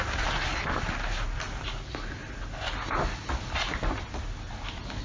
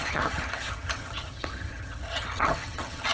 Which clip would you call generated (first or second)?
second